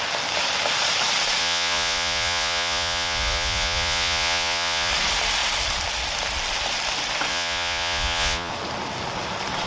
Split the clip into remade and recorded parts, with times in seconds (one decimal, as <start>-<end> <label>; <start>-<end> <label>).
0.0-1.4 recorded; 1.4-4.9 remade; 4.9-7.3 recorded; 7.3-8.5 remade; 8.5-9.7 recorded